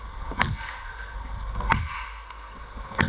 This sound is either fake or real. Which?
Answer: fake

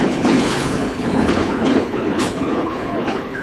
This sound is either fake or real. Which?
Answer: fake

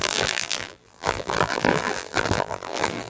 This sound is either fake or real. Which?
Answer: fake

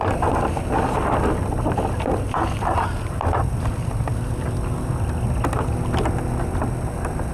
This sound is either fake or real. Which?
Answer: real